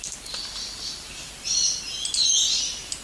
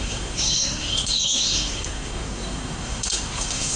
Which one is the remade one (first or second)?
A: second